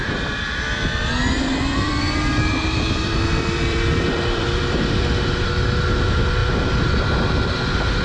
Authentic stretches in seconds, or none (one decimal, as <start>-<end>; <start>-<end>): 0.0-1.2; 5.5-6.4; 7.1-8.0